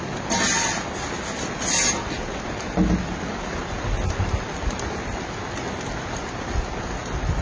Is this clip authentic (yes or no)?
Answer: yes